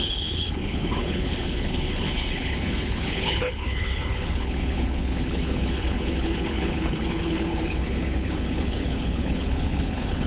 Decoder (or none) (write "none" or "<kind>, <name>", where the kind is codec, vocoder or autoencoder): codec, HILCodec